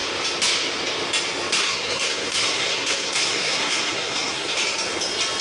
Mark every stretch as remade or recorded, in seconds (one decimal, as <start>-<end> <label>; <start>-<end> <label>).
0.0-1.6 recorded; 1.6-4.6 remade; 4.6-5.4 recorded